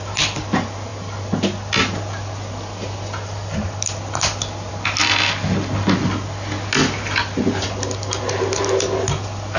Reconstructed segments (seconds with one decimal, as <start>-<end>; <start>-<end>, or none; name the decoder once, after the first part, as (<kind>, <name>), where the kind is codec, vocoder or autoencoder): none